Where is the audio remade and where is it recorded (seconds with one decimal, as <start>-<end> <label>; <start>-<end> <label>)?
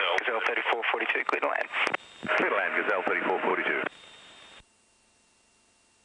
0.0-3.5 recorded; 3.5-4.9 remade; 4.9-6.0 recorded